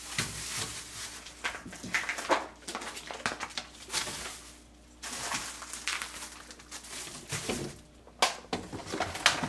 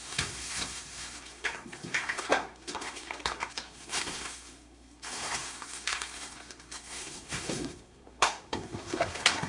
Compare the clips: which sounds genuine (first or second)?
first